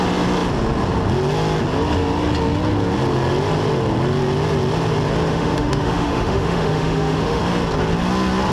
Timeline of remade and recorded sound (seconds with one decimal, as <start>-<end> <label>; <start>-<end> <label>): 0.0-5.3 recorded; 5.3-7.4 remade; 7.4-8.5 recorded